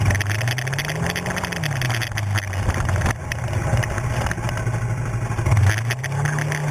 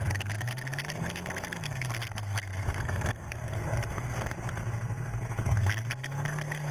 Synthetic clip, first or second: second